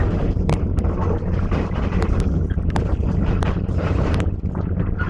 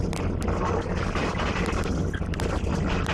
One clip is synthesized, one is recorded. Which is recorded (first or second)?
second